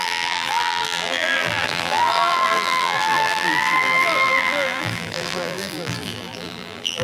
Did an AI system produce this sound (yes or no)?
yes